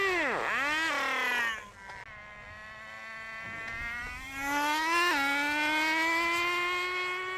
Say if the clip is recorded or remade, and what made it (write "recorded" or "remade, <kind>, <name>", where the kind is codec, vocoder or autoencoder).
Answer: recorded